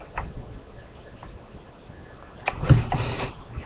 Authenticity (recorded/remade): recorded